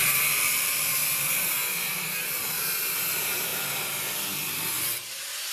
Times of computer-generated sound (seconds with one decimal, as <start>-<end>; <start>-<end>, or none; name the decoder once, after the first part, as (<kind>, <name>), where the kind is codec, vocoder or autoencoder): 0.0-5.5 (vocoder, BigVGAN v2)